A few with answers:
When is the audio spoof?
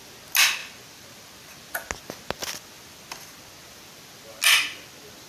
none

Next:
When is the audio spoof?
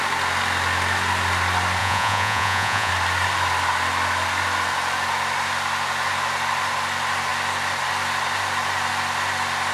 1.8-2.9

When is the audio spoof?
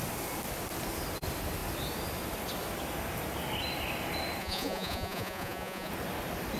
4.4-5.9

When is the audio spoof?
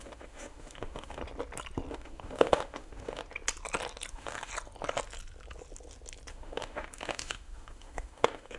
0.0-1.2; 1.9-3.2; 4.1-4.5; 6.3-8.6